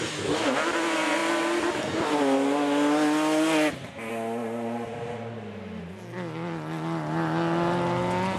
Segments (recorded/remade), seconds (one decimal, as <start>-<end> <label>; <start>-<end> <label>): 0.0-8.4 recorded